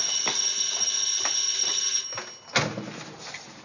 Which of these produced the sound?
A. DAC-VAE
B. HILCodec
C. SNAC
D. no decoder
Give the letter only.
D